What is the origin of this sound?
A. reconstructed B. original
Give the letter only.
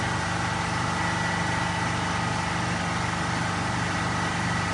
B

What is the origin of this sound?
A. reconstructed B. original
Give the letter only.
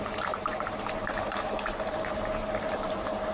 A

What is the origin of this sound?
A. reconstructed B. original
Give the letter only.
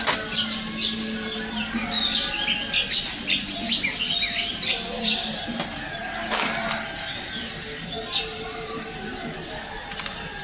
B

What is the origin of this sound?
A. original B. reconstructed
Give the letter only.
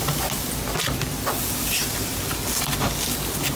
A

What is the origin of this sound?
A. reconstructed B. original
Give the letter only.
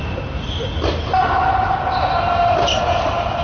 B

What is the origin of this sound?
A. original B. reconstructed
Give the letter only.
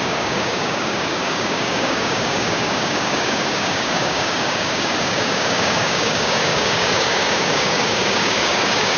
B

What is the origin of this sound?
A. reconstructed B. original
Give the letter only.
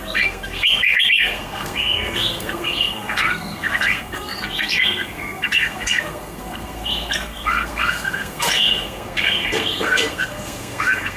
A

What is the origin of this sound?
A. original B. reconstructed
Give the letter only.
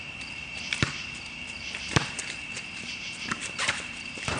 B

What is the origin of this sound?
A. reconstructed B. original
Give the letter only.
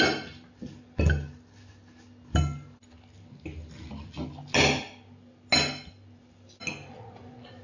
B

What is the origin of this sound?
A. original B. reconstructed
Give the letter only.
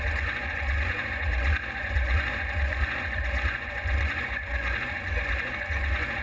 B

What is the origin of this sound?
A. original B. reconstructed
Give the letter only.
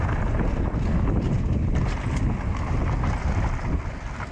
A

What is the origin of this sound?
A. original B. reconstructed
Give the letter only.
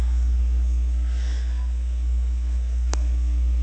B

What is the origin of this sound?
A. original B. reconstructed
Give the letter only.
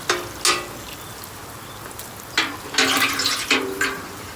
A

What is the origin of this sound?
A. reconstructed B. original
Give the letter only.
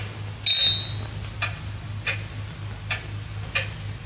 B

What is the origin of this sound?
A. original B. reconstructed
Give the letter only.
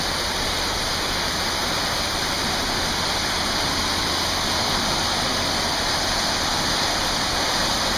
A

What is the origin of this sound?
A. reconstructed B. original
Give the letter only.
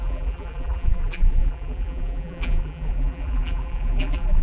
A